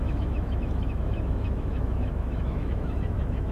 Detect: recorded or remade remade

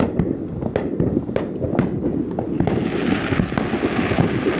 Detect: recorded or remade recorded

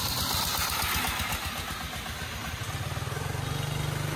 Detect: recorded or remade recorded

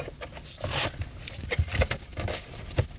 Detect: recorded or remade recorded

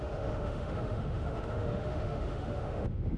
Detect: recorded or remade remade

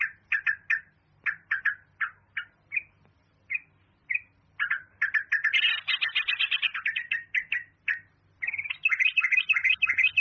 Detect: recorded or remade recorded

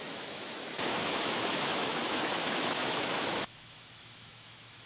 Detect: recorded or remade remade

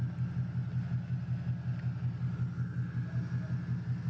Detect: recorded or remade recorded